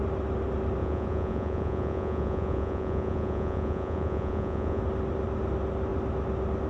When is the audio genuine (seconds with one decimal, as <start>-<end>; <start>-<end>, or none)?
0.0-0.8; 4.8-6.7